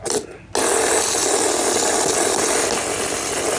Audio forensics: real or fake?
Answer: real